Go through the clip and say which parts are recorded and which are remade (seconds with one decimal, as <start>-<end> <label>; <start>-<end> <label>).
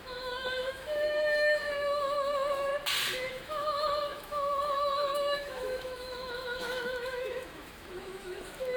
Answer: 0.0-2.7 remade; 2.7-3.2 recorded; 3.2-8.8 remade